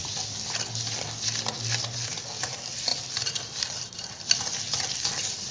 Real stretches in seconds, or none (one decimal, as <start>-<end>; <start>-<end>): 0.0-5.5